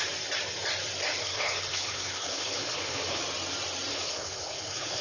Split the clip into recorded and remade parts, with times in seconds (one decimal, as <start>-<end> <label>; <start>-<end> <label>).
0.0-1.2 recorded; 1.2-3.2 remade; 3.2-3.9 recorded; 3.9-5.0 remade